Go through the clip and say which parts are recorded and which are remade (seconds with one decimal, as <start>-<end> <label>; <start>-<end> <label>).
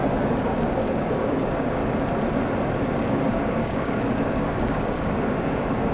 0.0-1.8 remade; 1.8-2.8 recorded; 2.8-5.9 remade